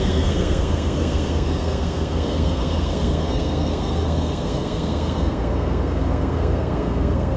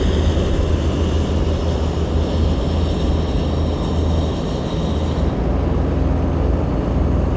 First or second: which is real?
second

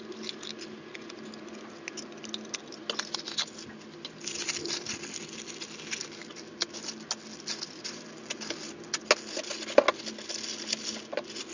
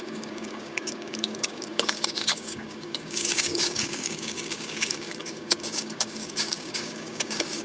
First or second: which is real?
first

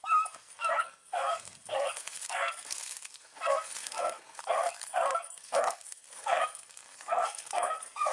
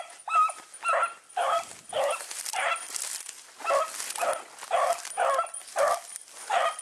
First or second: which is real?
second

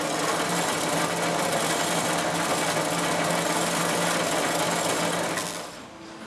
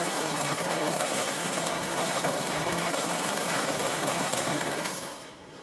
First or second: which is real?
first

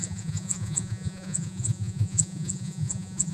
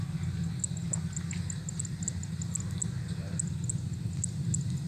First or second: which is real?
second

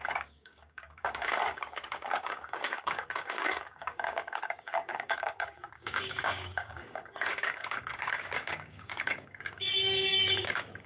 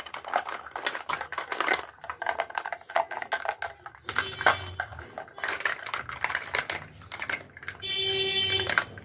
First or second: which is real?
second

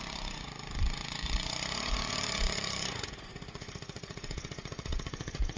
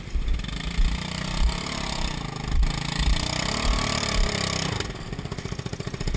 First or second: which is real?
second